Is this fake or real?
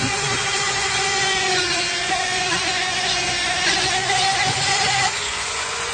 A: fake